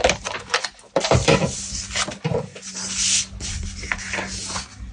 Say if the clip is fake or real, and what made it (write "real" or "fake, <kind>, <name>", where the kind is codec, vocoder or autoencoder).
real